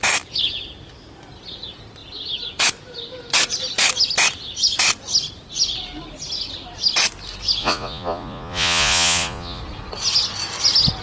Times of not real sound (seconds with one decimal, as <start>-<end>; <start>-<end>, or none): 7.6-9.6